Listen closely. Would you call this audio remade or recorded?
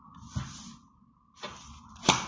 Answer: recorded